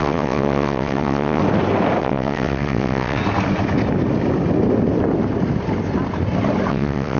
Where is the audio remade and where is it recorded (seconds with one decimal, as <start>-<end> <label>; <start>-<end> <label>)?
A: 0.0-1.4 remade; 1.4-2.0 recorded; 2.0-3.2 remade; 3.2-6.7 recorded; 6.7-7.2 remade